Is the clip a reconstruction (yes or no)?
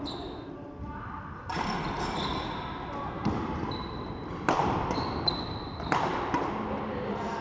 no